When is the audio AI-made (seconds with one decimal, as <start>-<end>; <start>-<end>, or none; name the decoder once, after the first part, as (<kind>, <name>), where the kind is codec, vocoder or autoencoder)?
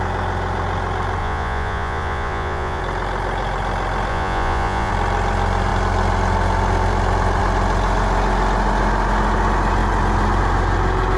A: 1.2-2.8 (vocoder, Vocos); 4.1-4.9